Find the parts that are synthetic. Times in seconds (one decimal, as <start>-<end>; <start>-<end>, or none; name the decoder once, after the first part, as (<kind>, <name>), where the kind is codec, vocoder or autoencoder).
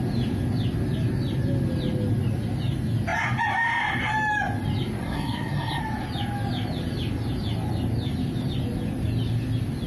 5.0-5.8 (codec, SNAC)